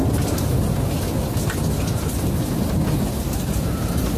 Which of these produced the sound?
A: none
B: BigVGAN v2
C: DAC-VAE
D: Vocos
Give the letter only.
A